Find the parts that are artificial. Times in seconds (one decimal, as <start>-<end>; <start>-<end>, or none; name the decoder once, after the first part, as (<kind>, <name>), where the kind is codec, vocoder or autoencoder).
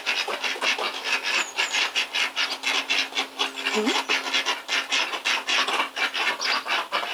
none